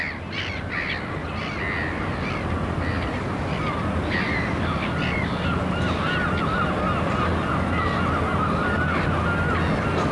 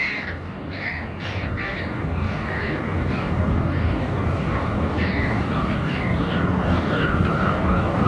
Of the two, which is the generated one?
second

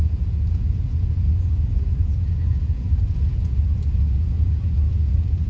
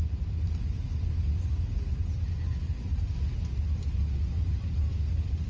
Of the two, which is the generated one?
first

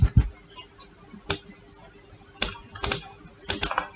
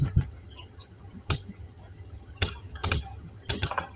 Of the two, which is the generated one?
second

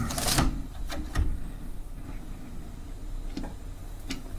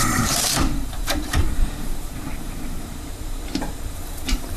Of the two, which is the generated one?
second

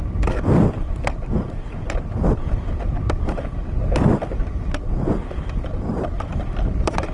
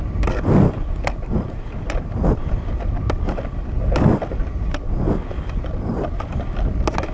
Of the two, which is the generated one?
first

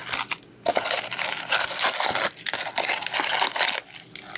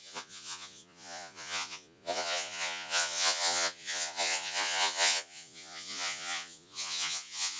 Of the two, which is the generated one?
second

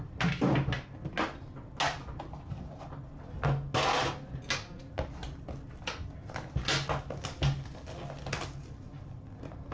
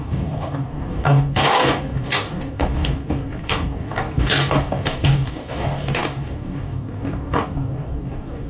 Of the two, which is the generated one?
second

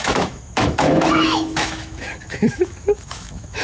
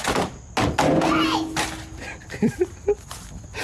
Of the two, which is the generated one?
first